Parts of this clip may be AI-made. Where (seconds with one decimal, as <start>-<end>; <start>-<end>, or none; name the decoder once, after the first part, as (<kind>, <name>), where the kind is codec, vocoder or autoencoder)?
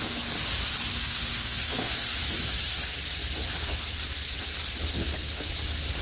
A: 0.9-1.9 (codec, SNAC); 5.0-5.5